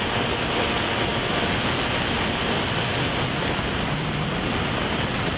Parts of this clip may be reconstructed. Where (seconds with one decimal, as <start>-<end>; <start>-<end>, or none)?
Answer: none